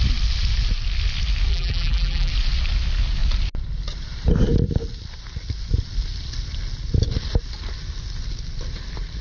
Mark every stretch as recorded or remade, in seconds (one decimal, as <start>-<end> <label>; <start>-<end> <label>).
0.0-1.5 recorded; 1.5-2.3 remade; 2.3-9.2 recorded

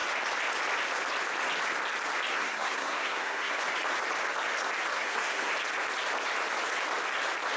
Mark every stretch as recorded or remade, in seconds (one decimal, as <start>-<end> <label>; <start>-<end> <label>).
0.0-2.3 recorded; 2.3-3.6 remade; 3.6-4.9 recorded; 4.9-5.5 remade; 5.5-7.6 recorded

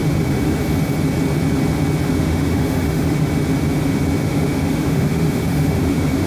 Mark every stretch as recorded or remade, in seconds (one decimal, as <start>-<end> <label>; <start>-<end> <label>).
0.0-0.6 remade; 0.6-2.1 recorded; 2.1-3.3 remade; 3.3-4.2 recorded; 4.2-6.3 remade

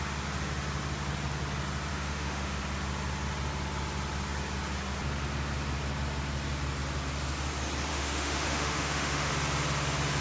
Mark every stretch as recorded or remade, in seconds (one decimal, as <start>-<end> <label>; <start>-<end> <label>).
0.0-1.9 recorded; 1.9-2.6 remade; 2.6-7.9 recorded; 7.9-9.3 remade; 9.3-10.2 recorded